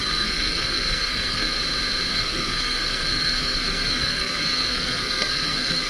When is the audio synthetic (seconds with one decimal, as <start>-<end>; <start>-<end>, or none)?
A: 0.0-1.6; 2.1-5.9